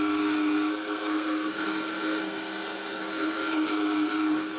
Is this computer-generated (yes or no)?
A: yes